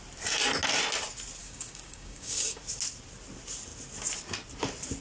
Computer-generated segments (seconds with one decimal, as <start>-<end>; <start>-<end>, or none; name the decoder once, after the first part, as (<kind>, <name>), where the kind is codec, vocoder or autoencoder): 1.4-2.6 (codec, DAC)